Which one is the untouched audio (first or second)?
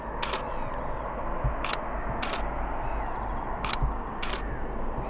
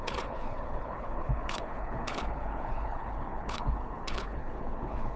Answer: first